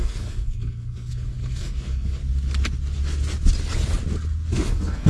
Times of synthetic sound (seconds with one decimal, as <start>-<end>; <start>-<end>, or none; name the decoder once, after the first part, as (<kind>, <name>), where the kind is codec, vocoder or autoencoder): 0.0-2.2 (codec, SNAC); 4.5-5.1